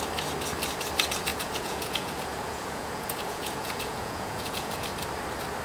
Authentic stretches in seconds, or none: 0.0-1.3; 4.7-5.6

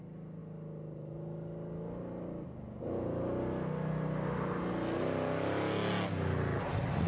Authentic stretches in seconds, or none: 0.0-7.1

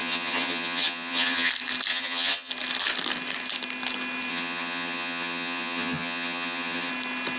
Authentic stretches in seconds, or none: 1.5-1.9; 2.5-4.3; 6.9-7.4

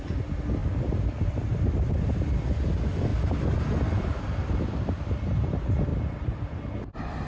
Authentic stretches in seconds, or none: 0.0-0.6; 1.9-3.1; 4.2-7.3

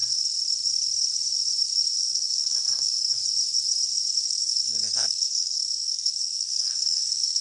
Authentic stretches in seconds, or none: 0.0-2.0; 3.2-4.3

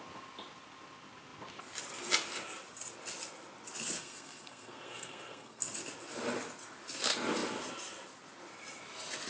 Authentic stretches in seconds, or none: 0.0-4.0; 5.6-9.3